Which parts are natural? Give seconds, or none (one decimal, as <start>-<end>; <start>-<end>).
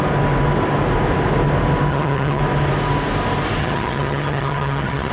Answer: 0.0-1.9; 2.4-3.6